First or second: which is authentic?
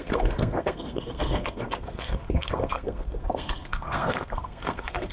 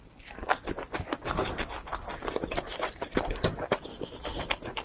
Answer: second